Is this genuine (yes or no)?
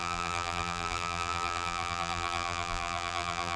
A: no